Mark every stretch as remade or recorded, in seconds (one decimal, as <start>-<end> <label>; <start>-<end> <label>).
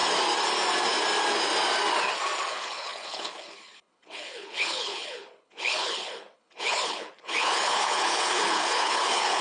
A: 0.0-2.5 recorded; 2.5-9.4 remade